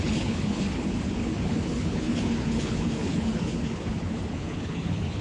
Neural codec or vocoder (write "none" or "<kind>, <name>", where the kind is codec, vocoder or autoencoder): codec, HILCodec